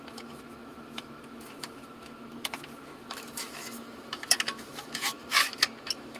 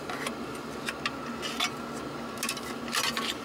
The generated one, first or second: first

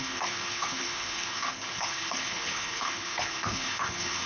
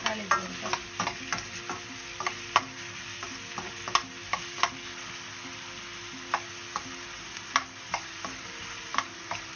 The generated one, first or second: first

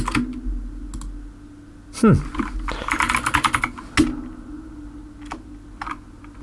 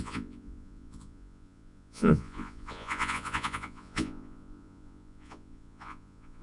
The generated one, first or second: second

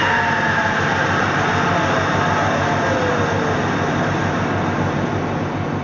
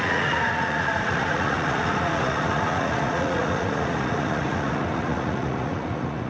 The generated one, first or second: second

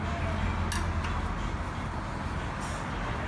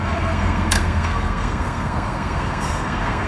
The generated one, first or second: second